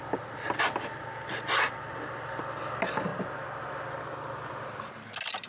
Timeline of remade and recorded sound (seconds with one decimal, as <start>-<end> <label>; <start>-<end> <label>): 0.0-3.1 recorded; 3.1-3.6 remade; 3.6-5.5 recorded